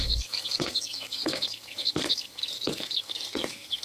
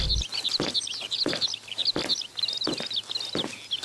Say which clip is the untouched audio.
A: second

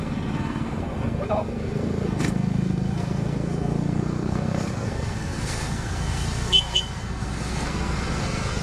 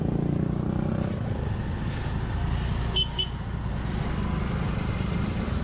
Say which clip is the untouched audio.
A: second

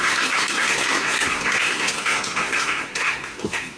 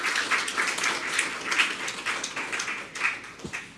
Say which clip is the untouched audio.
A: second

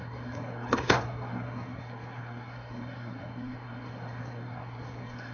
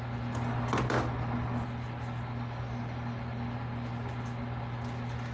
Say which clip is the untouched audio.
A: second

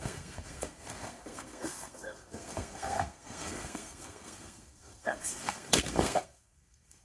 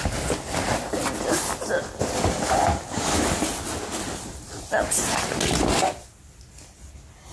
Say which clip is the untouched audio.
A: second